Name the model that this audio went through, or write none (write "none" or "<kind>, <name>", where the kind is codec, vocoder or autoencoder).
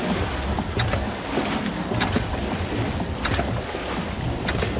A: none